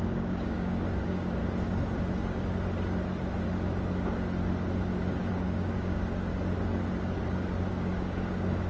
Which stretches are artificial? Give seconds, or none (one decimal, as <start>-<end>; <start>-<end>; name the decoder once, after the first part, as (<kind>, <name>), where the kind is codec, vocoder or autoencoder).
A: 0.0-1.4 (codec, DAC); 5.3-6.3; 7.7-8.7

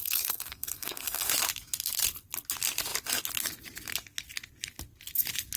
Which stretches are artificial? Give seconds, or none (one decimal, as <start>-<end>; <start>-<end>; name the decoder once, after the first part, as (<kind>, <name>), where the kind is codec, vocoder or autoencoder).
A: 0.0-1.3 (codec, SNAC)